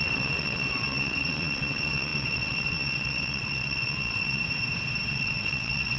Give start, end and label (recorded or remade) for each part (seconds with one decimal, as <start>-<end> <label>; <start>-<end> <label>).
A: 0.0-4.4 remade; 4.4-5.1 recorded; 5.1-6.0 remade